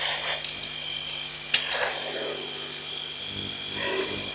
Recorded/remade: recorded